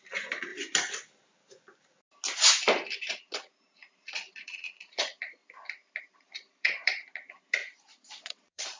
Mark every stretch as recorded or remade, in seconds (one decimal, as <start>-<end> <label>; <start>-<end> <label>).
0.0-0.5 remade; 0.5-3.1 recorded; 3.1-5.4 remade; 5.4-6.0 recorded; 6.0-7.6 remade; 7.6-8.1 recorded; 8.1-8.8 remade